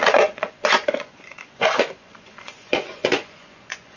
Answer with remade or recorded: remade